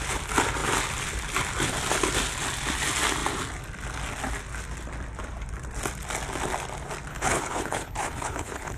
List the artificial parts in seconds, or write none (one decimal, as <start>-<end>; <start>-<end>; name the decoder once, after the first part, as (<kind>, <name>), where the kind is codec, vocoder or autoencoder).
7.1-8.8 (codec, HILCodec)